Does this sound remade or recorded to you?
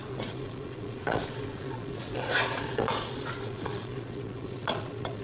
remade